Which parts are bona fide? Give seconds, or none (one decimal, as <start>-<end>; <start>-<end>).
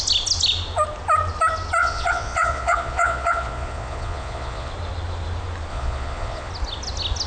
0.0-1.8; 4.7-5.7; 6.5-7.3